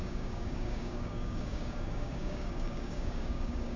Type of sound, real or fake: fake